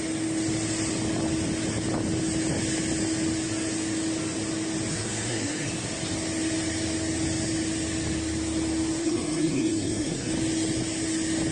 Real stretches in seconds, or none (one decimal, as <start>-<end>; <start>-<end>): 0.0-4.9; 5.7-9.0; 10.3-11.5